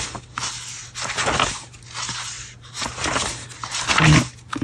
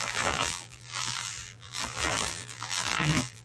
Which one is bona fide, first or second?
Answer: first